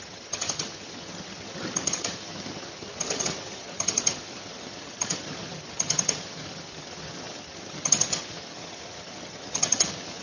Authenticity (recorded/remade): remade